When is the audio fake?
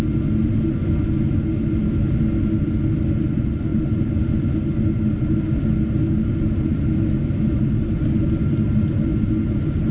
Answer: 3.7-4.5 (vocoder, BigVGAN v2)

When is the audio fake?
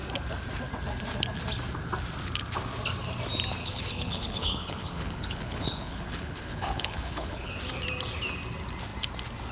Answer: 3.6-7.5 (codec, HILCodec)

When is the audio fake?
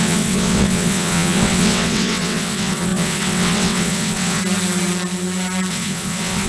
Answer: 0.0-4.4 (vocoder, WaveNeXt); 5.7-6.5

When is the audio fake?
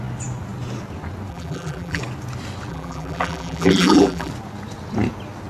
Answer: 1.3-2.0 (vocoder, BigVGAN v2); 2.7-4.3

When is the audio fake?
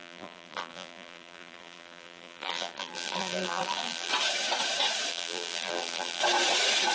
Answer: 0.0-4.1 (vocoder, BigVGAN v2); 5.1-6.2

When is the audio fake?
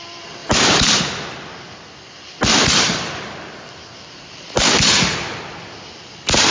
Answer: 0.4-1.0 (vocoder, BigVGAN v2); 2.5-5.4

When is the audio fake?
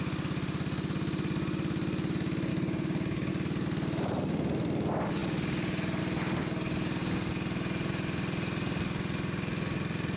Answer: 2.5-3.3 (codec, DAC)